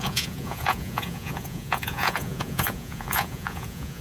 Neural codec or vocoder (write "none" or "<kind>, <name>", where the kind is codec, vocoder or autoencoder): vocoder, Vocos